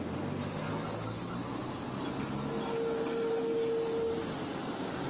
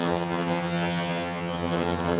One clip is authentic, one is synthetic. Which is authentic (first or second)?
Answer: first